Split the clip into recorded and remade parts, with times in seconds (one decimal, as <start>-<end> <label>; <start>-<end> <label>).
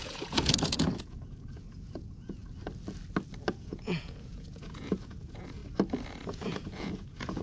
0.0-2.4 remade; 2.4-3.5 recorded; 3.5-5.6 remade; 5.6-6.1 recorded; 6.1-7.4 remade